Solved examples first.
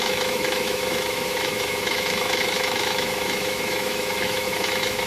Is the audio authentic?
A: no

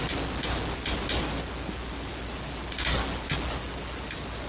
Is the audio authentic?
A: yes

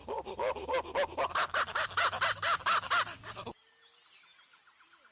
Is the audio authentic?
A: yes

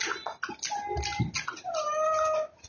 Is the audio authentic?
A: yes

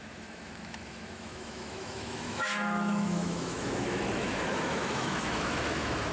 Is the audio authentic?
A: no